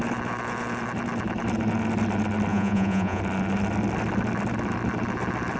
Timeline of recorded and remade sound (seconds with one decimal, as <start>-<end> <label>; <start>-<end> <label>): 0.0-2.5 recorded; 2.5-3.2 remade; 3.2-5.6 recorded